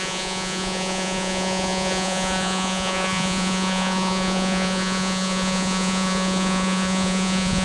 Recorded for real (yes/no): no